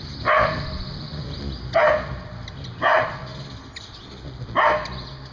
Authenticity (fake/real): real